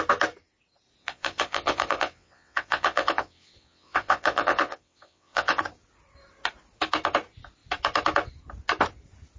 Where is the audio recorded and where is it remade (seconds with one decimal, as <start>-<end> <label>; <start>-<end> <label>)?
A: 0.0-1.0 recorded; 1.0-5.6 remade; 5.6-9.4 recorded